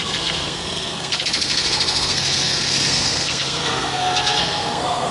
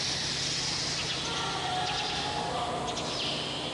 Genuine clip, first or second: second